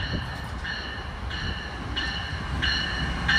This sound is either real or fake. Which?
real